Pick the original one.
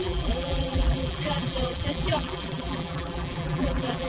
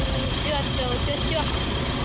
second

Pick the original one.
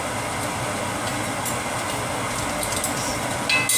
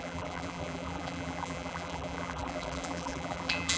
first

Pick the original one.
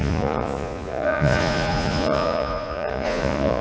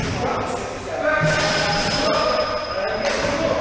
second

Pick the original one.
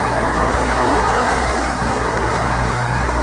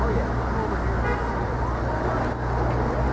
second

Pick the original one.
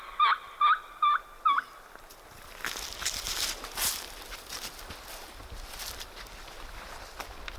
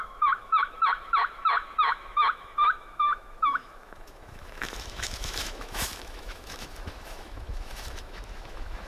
first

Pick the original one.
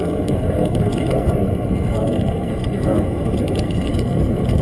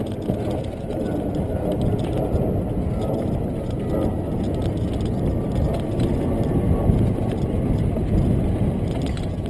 second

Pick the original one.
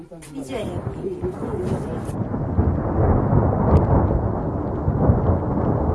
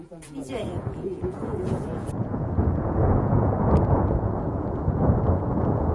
first